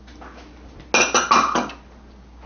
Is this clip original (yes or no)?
yes